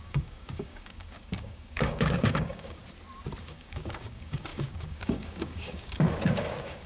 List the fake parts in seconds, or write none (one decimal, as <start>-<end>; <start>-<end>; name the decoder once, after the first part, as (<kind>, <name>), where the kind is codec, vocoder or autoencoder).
0.0-2.8 (codec, DAC); 3.4-6.9